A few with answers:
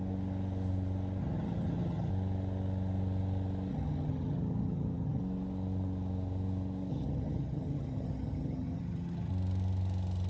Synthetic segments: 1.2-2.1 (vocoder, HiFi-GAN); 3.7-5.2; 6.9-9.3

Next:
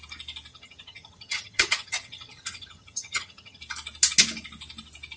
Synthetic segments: 0.5-3.6 (vocoder, HiFi-GAN)

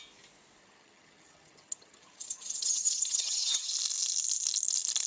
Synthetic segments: 0.6-3.7 (vocoder, HiFi-GAN)

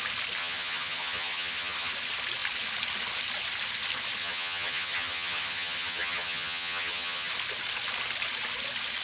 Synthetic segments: 0.4-1.9 (vocoder, HiFi-GAN); 4.2-7.3

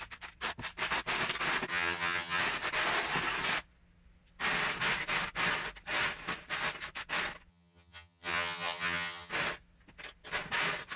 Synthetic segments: 1.7-2.4 (vocoder, HiFi-GAN); 7.5-9.3

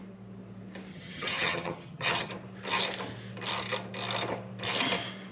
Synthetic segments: 0.9-2.3 (vocoder, HiFi-GAN)

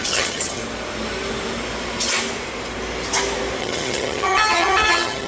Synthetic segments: 0.0-0.6 (vocoder, HiFi-GAN); 3.6-5.3